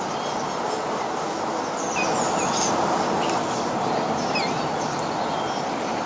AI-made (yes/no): no